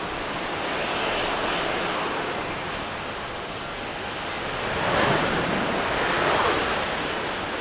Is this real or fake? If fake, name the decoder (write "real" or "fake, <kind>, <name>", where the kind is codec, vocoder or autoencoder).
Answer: real